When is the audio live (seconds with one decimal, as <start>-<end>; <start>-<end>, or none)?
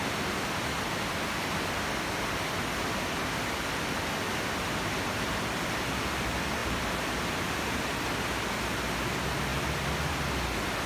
0.0-10.9